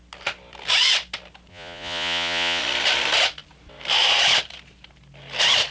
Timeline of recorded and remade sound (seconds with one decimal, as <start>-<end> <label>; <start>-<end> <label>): 0.0-1.5 recorded; 1.5-2.6 remade; 2.6-5.7 recorded